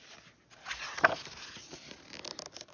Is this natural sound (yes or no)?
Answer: yes